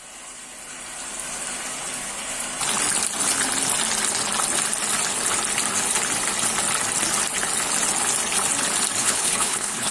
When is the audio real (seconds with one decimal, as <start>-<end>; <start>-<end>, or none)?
0.0-9.0